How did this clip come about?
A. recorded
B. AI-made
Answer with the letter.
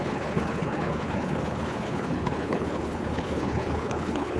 B